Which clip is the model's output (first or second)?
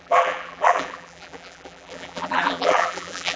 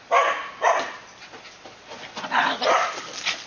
first